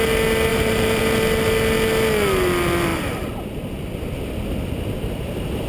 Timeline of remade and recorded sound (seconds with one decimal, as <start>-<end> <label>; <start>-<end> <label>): 0.0-0.5 recorded; 0.5-1.0 remade; 1.0-2.9 recorded; 2.9-3.7 remade; 3.7-5.7 recorded